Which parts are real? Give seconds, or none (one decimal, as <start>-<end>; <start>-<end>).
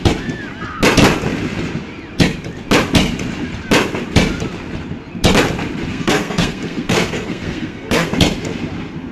0.0-5.9; 8.1-9.1